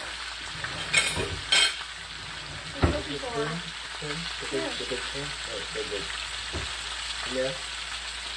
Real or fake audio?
real